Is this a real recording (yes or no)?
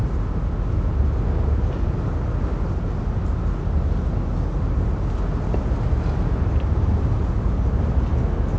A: yes